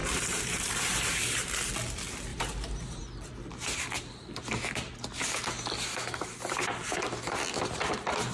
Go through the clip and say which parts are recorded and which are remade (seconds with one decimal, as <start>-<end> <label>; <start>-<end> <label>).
0.0-1.7 remade; 1.7-2.3 recorded; 2.3-3.0 remade; 3.0-8.3 recorded